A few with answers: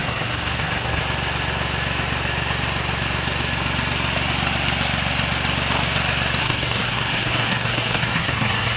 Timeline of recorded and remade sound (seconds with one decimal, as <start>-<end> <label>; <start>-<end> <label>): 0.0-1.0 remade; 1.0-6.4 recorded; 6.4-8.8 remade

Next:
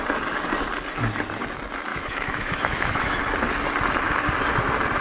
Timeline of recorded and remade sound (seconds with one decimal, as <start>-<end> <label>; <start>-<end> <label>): 0.0-1.9 recorded; 1.9-3.2 remade; 3.2-5.0 recorded

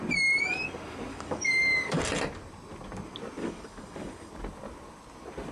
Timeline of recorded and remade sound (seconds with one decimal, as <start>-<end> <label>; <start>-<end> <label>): 0.0-1.1 recorded; 1.1-2.0 remade; 2.0-3.4 recorded; 3.4-4.3 remade; 4.3-5.5 recorded

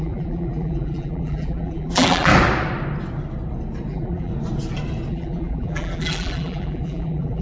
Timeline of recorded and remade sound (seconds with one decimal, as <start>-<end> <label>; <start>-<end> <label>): 0.0-2.3 remade; 2.3-3.9 recorded; 3.9-4.3 remade; 4.3-5.1 recorded; 5.1-7.4 remade

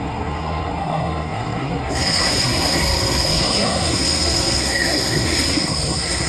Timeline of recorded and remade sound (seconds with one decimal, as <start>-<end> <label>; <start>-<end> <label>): 0.0-6.3 remade

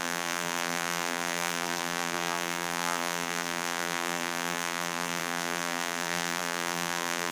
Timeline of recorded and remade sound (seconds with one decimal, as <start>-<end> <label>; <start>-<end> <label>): 0.0-7.3 remade